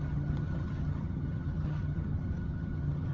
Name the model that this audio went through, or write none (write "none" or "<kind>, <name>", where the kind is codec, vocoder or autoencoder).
vocoder, HiFi-GAN